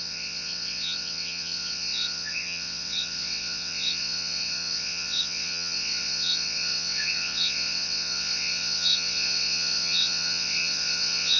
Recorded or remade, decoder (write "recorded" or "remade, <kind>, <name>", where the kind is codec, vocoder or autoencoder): remade, vocoder, WaveNeXt